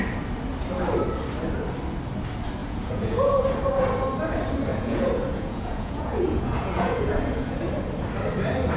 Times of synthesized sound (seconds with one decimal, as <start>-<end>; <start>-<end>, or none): 2.6-3.4; 4.7-7.7